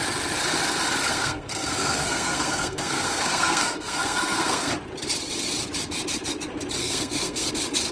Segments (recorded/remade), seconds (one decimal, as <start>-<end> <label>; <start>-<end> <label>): 0.0-1.1 recorded; 1.1-4.7 remade; 4.7-6.8 recorded; 6.8-7.5 remade; 7.5-7.9 recorded